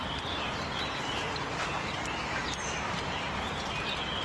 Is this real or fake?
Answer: real